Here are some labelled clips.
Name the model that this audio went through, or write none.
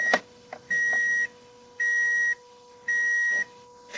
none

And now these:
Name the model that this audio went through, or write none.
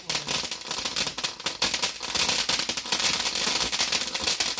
none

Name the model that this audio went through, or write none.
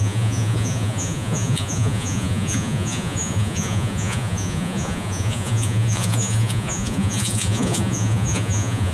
vocoder, Vocos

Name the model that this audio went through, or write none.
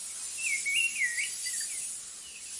none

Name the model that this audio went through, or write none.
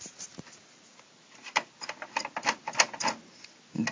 none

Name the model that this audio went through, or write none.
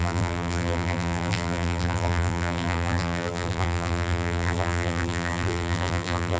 vocoder, BigVGAN v2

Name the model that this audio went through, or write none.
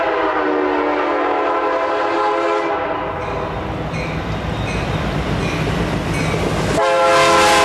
none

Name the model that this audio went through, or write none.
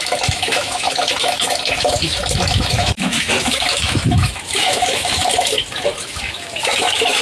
autoencoder, DAC-VAE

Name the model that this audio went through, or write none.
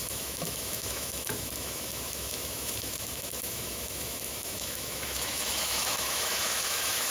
autoencoder, DAC-VAE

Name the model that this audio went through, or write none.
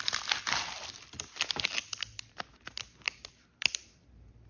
none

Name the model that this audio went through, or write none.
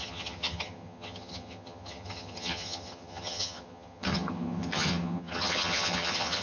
vocoder, HiFi-GAN